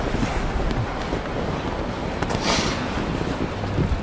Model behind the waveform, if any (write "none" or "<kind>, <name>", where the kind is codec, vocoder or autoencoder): none